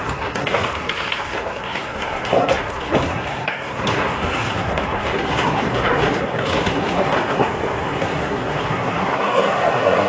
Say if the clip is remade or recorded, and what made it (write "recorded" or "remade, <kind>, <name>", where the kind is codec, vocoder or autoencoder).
remade, codec, SNAC